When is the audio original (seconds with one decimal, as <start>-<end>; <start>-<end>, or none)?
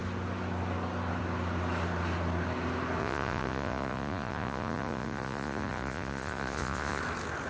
0.0-3.0; 7.0-7.5